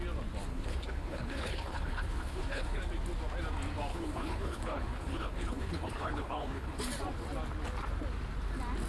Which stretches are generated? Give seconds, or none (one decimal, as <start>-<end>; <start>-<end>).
0.5-2.8; 3.9-6.8